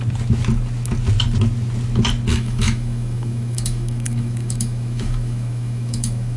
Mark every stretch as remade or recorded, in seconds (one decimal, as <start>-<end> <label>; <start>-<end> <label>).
0.0-2.3 recorded; 2.3-6.4 remade